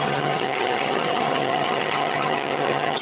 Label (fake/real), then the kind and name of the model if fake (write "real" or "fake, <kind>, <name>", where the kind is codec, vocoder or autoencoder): fake, vocoder, HiFi-GAN